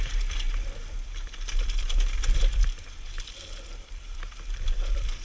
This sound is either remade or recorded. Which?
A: remade